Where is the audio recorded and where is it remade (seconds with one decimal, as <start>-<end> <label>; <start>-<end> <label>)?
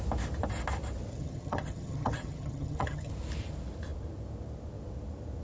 0.0-1.1 recorded; 1.1-3.1 remade; 3.1-5.4 recorded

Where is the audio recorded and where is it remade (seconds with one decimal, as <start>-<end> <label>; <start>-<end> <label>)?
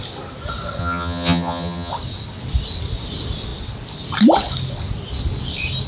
0.0-0.8 recorded; 0.8-1.9 remade; 1.9-5.9 recorded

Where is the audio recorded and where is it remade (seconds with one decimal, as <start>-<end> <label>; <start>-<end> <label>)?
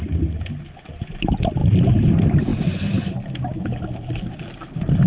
0.0-5.1 recorded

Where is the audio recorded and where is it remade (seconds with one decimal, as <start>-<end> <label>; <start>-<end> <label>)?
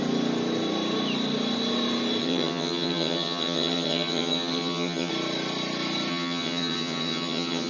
0.0-2.2 recorded; 2.2-5.1 remade; 5.1-6.1 recorded; 6.1-7.7 remade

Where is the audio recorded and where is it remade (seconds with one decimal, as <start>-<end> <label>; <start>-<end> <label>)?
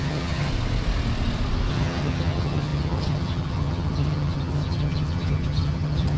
0.0-0.5 remade; 0.5-1.7 recorded; 1.7-6.2 remade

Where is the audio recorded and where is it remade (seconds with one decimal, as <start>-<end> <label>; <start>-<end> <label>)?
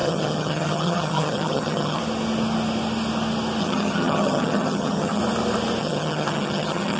0.0-2.0 remade; 2.0-3.6 recorded; 3.6-5.2 remade; 5.2-5.8 recorded; 5.8-7.0 remade